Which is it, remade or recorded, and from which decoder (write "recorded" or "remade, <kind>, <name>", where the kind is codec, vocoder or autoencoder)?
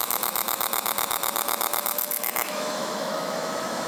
remade, autoencoder, DAC-VAE